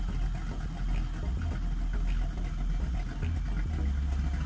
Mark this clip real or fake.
real